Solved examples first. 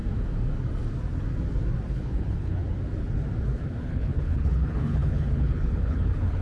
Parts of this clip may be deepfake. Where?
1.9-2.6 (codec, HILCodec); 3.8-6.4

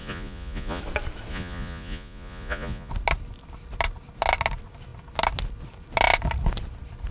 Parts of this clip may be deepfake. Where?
0.0-0.8 (vocoder, Vocos); 1.3-2.9

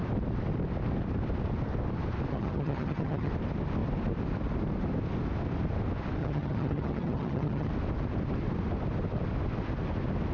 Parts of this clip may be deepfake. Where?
2.3-3.3 (vocoder, HiFi-GAN); 6.2-7.7

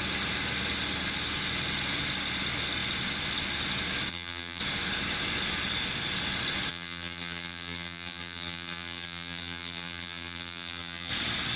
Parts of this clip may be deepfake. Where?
4.1-4.6 (vocoder, BigVGAN v2); 6.7-11.1

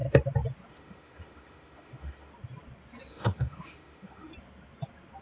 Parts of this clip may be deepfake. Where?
0.7-2.3 (autoencoder, DAC-VAE); 3.1-4.3

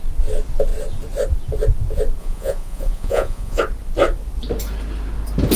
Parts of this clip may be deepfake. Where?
2.2-3.6 (vocoder, Vocos)

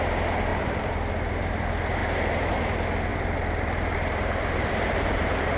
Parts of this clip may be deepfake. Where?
0.5-1.1 (vocoder, BigVGAN v2); 2.0-2.7; 3.1-5.6